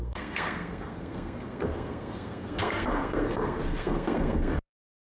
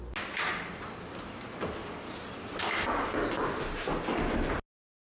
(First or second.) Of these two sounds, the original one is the second